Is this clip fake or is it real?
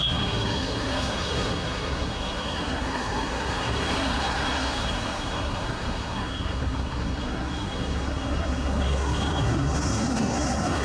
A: fake